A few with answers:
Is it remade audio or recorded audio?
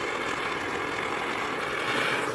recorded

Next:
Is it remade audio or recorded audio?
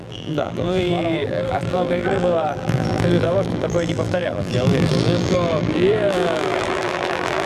remade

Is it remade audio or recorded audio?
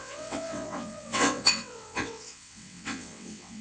remade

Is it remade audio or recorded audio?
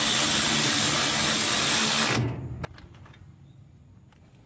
recorded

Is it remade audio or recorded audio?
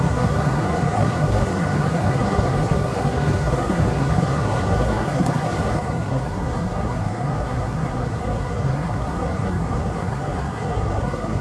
remade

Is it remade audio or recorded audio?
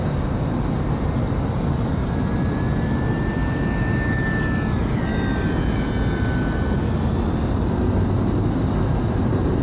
recorded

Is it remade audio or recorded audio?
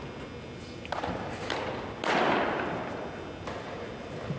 recorded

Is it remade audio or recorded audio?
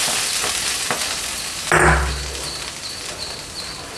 recorded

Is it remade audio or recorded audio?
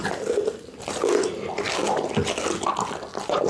recorded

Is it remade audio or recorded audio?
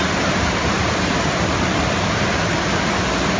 recorded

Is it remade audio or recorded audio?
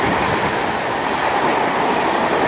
recorded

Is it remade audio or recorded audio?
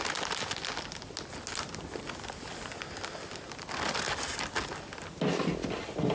recorded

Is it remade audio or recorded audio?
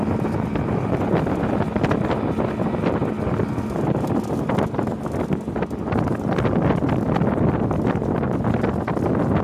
recorded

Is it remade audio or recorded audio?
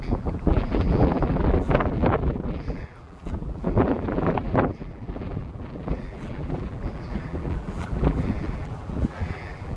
remade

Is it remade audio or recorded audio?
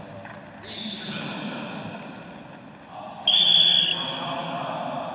recorded